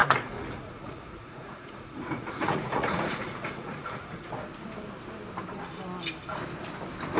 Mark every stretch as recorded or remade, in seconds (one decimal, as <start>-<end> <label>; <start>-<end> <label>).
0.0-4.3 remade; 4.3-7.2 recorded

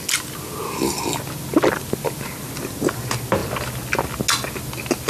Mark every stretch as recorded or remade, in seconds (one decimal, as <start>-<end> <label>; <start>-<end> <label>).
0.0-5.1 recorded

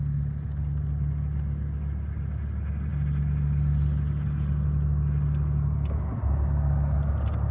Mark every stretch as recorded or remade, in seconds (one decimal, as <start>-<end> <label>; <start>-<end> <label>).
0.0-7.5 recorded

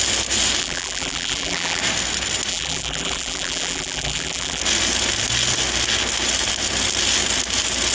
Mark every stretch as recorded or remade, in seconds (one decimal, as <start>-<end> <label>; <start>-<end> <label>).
0.0-0.6 recorded; 0.6-1.8 remade; 1.8-2.5 recorded; 2.5-4.6 remade; 4.6-7.9 recorded

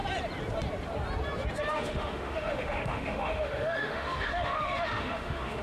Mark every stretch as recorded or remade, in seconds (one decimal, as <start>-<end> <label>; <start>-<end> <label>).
0.0-1.7 recorded; 1.7-5.6 remade

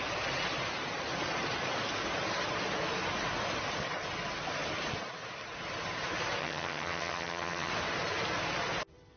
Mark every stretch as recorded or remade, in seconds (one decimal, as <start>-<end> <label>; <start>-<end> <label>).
0.0-6.4 recorded; 6.4-7.7 remade; 7.7-9.2 recorded

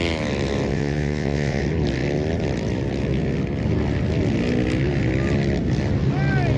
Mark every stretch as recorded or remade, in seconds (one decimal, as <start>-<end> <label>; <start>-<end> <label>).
0.0-0.7 recorded; 0.7-1.6 remade; 1.6-6.6 recorded

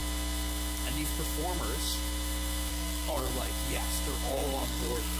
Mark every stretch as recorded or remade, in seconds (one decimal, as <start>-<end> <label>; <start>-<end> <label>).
0.0-2.7 recorded; 2.7-3.3 remade; 3.3-4.3 recorded; 4.3-5.2 remade